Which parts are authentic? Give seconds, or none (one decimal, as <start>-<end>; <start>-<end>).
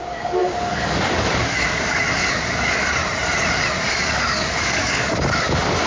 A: 3.0-3.9